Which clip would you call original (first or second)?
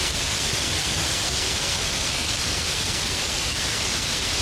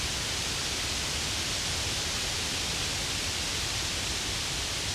second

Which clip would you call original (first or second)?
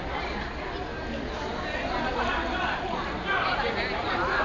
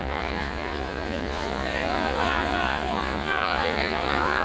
first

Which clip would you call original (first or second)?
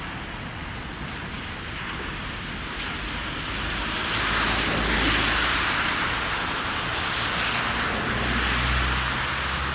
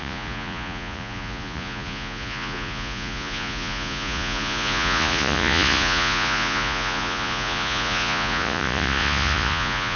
first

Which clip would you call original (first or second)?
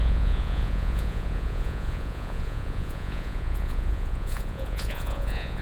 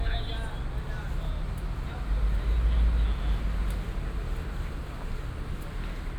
second